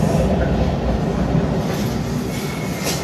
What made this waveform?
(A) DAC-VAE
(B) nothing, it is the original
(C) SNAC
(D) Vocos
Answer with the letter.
B